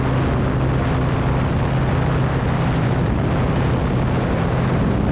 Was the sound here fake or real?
real